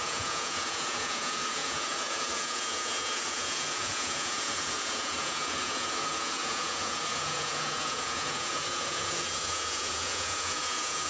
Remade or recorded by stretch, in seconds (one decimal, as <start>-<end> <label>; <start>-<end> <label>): 0.0-11.1 remade